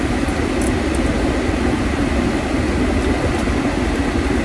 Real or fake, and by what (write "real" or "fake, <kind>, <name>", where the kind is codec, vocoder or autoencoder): real